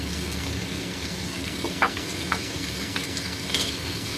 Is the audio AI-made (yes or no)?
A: yes